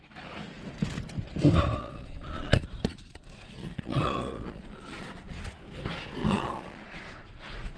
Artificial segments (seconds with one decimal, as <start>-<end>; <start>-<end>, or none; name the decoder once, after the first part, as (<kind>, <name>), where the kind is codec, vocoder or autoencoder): 1.8-5.4 (vocoder, Vocos); 6.2-7.8